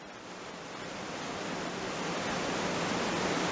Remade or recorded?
recorded